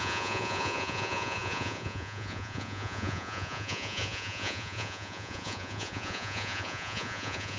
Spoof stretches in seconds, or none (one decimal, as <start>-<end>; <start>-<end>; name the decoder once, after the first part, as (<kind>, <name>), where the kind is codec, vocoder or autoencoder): 0.0-7.6 (vocoder, Vocos)